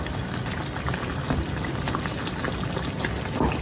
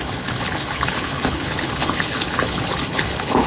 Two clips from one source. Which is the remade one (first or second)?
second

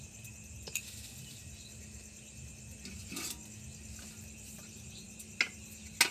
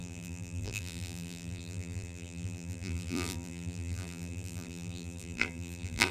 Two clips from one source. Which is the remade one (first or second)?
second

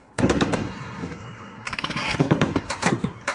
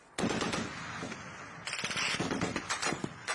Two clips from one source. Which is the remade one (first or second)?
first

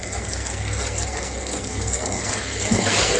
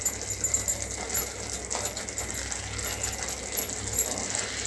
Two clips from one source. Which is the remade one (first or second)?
first